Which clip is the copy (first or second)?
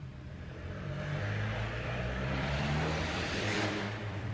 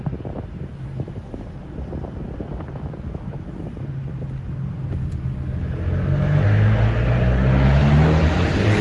first